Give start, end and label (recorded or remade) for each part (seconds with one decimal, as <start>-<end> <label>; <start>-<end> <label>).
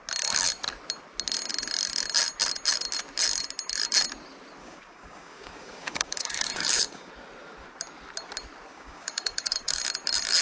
0.0-4.6 recorded; 4.6-7.1 remade; 7.1-8.7 recorded; 8.7-9.8 remade; 9.8-10.4 recorded